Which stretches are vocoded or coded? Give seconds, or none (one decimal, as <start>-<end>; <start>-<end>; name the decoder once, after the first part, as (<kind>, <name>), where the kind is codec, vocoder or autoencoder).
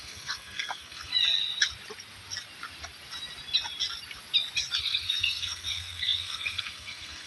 0.0-1.1 (codec, SNAC); 4.8-7.3